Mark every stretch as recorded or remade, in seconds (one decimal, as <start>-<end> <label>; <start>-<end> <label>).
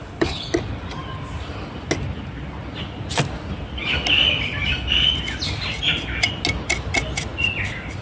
0.0-0.5 remade; 0.5-8.0 recorded